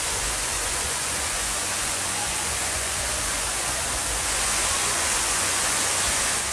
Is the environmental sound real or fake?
fake